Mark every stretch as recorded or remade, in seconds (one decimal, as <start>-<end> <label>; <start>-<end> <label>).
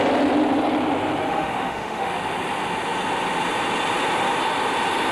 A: 0.0-1.3 recorded; 1.3-2.1 remade; 2.1-5.1 recorded